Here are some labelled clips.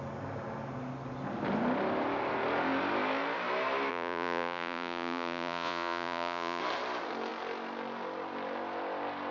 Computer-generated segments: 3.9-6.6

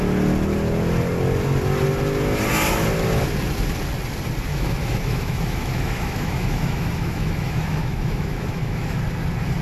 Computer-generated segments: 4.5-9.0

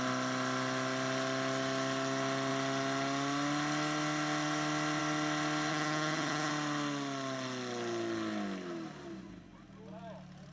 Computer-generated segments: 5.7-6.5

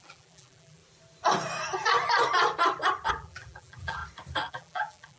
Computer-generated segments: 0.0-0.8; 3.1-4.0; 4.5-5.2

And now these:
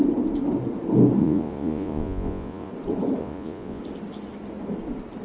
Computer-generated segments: 1.2-2.7; 3.2-3.8